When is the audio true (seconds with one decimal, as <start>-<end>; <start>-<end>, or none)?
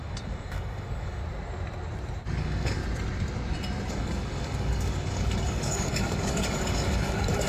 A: 1.2-2.4; 2.8-3.9